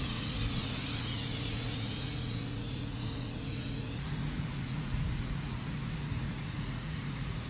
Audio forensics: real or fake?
fake